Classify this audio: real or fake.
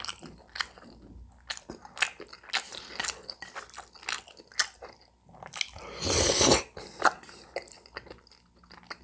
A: real